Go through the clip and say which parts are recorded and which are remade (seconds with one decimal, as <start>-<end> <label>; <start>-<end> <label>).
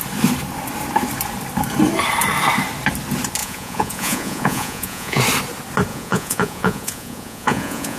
0.0-3.4 recorded; 3.4-5.2 remade; 5.2-5.9 recorded; 5.9-8.0 remade